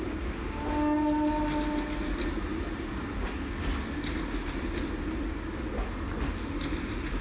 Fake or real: real